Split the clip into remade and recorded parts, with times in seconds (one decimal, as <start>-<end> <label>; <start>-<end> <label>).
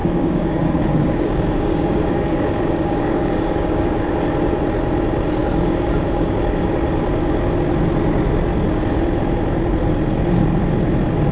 0.0-4.2 remade; 4.2-5.4 recorded; 5.4-6.7 remade; 6.7-11.3 recorded